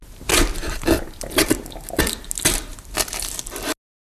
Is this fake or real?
real